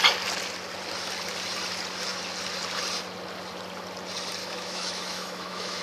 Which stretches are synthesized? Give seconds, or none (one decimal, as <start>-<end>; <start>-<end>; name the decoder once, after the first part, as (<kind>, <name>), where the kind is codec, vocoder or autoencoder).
4.4-5.8 (autoencoder, DAC-VAE)